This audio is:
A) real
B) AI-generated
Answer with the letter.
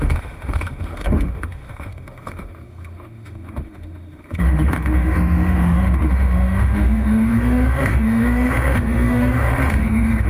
B